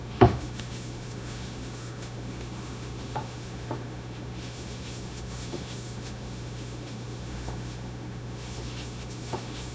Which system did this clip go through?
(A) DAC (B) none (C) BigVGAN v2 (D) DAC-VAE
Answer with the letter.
D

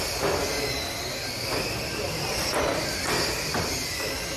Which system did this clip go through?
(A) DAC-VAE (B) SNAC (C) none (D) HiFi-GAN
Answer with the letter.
C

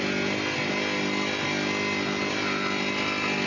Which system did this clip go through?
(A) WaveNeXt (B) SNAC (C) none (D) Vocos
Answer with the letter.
C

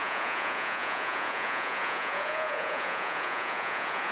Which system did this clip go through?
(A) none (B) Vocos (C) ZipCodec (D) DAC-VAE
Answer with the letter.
B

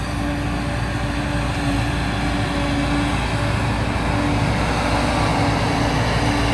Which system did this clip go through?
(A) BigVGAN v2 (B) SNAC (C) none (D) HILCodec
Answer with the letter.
C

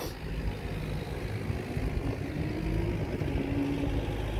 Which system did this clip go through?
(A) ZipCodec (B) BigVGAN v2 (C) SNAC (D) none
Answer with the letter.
D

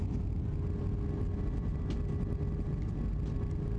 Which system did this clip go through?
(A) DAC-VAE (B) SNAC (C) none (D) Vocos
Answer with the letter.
C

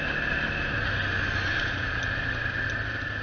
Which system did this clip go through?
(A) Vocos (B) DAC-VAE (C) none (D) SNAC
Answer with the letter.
C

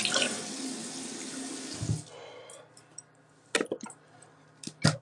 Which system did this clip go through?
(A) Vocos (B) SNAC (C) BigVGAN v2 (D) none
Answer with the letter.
D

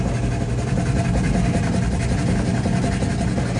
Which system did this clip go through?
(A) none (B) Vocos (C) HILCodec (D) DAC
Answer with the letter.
A